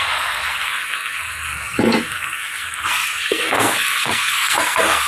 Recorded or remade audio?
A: remade